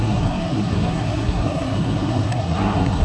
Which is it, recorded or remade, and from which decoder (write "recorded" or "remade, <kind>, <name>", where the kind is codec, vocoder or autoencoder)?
remade, codec, SNAC